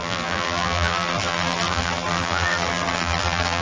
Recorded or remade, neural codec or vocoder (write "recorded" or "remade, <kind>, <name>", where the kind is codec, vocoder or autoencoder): remade, vocoder, BigVGAN v2